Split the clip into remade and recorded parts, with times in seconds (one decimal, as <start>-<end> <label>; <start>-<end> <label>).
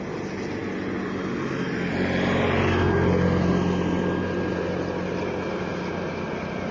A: 0.0-6.7 recorded